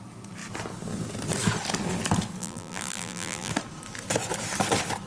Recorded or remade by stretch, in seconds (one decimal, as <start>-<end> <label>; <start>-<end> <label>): 0.0-2.4 recorded; 2.4-3.5 remade; 3.5-5.1 recorded